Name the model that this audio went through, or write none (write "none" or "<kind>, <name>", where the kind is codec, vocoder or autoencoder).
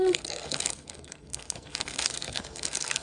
codec, SNAC